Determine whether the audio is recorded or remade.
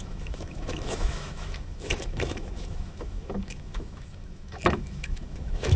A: remade